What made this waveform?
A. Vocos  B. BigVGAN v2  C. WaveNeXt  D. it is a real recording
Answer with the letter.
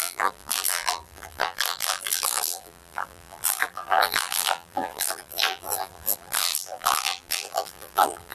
B